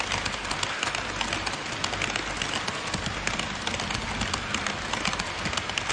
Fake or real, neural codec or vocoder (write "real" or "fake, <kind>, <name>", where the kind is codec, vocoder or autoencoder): real